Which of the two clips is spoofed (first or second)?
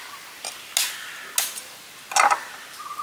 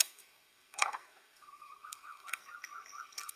second